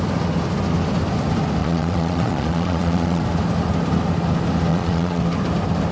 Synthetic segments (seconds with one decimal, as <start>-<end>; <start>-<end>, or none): 1.6-3.2; 4.7-5.2